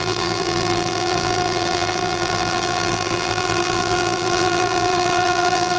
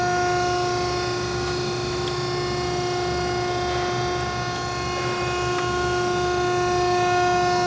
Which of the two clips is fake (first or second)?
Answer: first